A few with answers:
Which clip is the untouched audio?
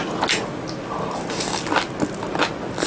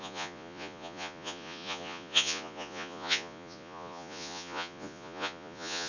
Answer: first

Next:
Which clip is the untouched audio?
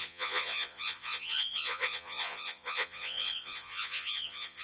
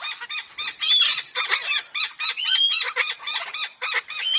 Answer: second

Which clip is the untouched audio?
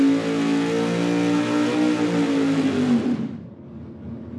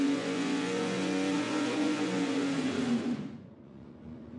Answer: first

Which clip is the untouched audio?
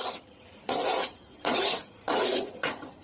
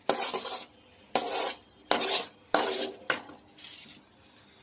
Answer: second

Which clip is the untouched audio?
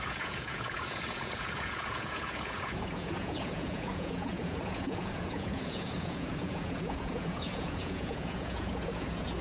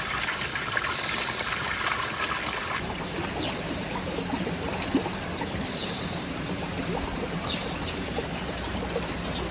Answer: second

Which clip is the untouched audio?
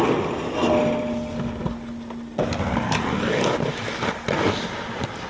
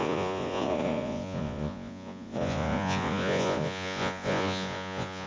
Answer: first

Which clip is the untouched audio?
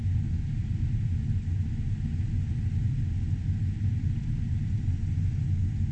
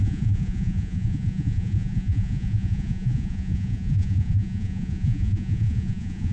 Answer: first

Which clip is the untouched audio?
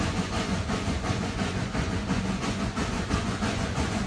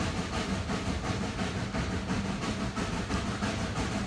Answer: second